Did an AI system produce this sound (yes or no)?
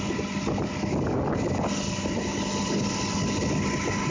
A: no